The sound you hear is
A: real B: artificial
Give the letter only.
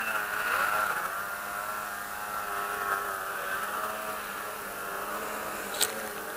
A